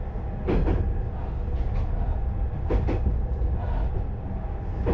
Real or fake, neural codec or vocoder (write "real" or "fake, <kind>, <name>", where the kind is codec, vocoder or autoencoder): real